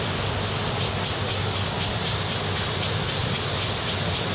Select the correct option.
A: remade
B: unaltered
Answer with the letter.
B